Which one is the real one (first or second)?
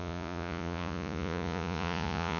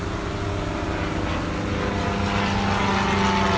second